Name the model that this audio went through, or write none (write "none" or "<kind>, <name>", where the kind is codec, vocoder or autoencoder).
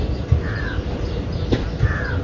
vocoder, BigVGAN v2